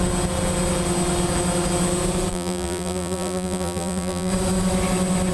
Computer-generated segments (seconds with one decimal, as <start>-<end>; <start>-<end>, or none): 2.3-4.3

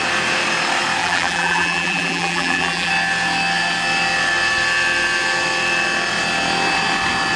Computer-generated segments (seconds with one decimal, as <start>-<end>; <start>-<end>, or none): 1.0-2.9

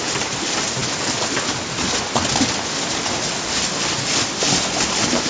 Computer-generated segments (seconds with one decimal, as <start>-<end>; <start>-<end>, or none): 0.0-0.8; 4.0-5.3

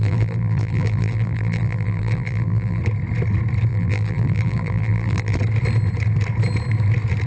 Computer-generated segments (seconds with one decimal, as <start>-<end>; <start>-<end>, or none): 0.0-2.8; 3.7-5.4

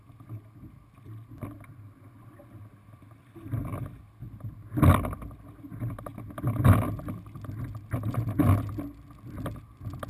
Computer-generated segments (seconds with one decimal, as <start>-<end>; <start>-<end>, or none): none

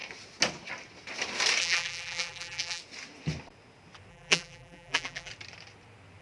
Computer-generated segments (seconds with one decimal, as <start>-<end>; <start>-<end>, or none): 1.6-2.8; 4.1-5.3